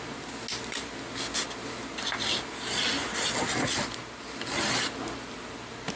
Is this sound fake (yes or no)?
no